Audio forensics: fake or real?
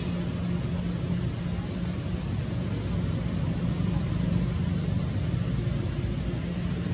real